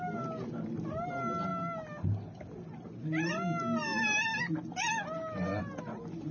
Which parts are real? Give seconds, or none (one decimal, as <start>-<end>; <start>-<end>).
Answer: 0.0-6.3